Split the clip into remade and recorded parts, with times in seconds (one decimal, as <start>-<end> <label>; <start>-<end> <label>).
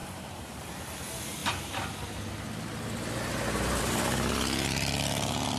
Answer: 0.0-0.6 remade; 0.6-5.6 recorded